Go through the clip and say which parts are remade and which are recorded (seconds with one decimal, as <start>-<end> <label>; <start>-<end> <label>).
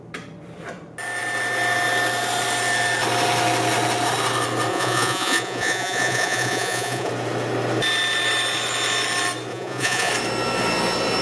0.0-4.7 recorded; 4.7-7.1 remade; 7.1-9.5 recorded; 9.5-10.1 remade; 10.1-11.2 recorded